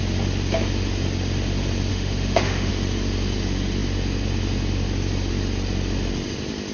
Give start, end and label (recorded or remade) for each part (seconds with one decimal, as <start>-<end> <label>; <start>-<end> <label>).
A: 0.0-1.9 recorded; 1.9-2.7 remade; 2.7-6.7 recorded